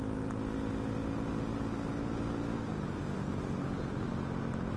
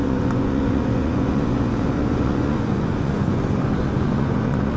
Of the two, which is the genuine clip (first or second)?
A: first